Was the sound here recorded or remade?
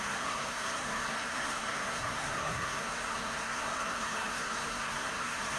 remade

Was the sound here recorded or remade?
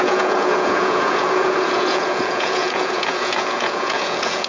remade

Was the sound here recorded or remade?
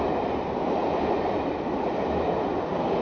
recorded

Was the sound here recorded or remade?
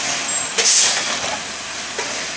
recorded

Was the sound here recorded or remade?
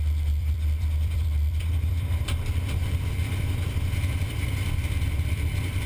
remade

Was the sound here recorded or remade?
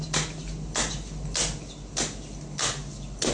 recorded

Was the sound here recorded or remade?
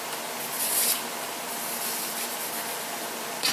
recorded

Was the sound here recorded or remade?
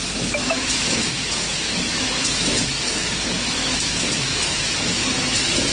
remade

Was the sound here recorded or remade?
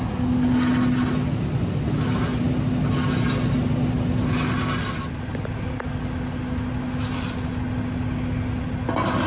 recorded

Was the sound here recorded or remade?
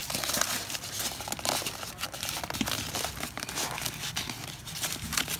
recorded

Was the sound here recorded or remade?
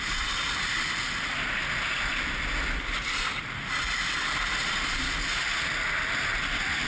recorded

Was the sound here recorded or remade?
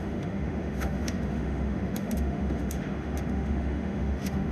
remade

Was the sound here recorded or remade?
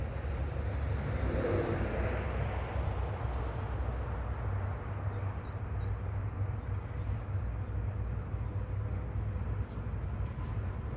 recorded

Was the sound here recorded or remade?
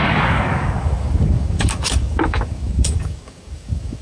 remade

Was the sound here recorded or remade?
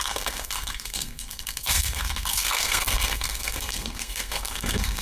remade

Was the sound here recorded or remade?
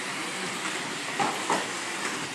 recorded